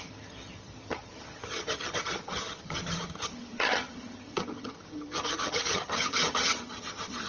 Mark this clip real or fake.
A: fake